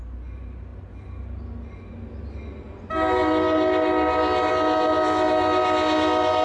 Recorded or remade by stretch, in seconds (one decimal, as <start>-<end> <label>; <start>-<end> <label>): 0.0-6.4 recorded